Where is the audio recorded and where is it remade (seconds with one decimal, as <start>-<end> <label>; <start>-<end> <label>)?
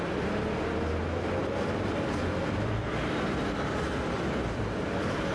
0.0-1.4 recorded; 1.4-4.6 remade; 4.6-5.3 recorded